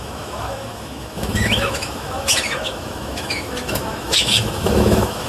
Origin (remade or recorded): remade